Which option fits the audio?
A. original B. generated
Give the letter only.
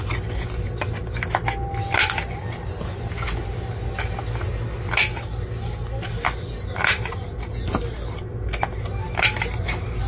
A